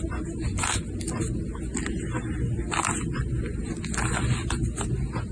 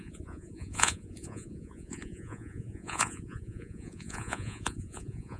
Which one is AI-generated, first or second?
second